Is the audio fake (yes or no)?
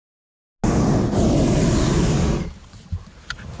no